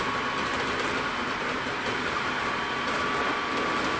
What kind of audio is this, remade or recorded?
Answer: recorded